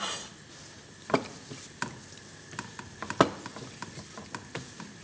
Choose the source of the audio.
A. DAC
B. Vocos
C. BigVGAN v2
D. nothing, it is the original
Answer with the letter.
D